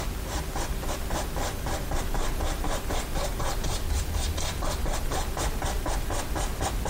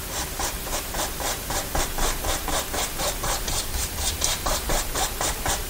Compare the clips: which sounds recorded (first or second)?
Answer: first